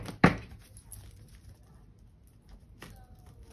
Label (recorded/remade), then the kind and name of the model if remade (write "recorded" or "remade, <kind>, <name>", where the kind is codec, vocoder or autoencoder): recorded